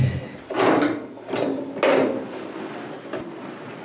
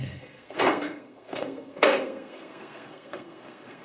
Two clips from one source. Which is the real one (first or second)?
first